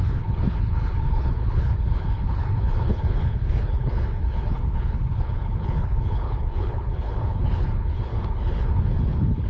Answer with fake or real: fake